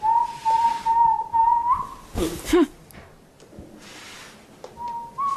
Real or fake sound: real